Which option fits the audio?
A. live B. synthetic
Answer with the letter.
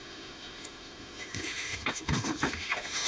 B